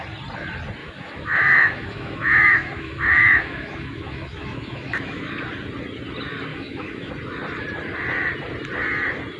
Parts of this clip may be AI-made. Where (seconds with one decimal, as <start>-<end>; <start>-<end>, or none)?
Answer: 0.8-5.2; 6.5-7.1